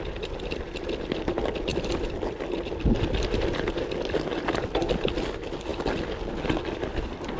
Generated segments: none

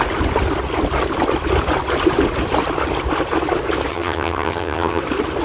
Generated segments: 3.9-5.0

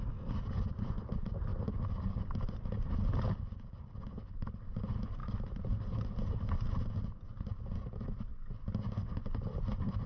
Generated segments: none

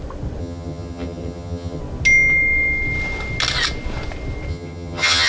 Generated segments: 0.4-1.8; 4.5-5.3

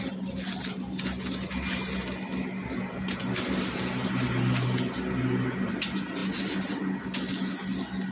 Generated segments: none